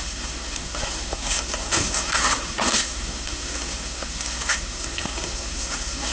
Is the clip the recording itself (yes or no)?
no